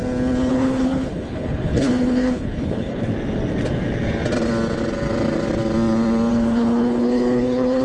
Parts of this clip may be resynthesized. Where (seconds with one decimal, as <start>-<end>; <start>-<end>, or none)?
0.5-3.1; 6.3-7.8

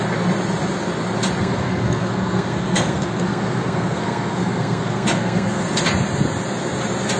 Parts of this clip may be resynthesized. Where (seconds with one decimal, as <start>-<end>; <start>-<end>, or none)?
1.4-5.6